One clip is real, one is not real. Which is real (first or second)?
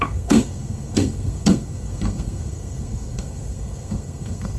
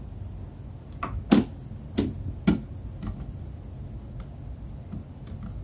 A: second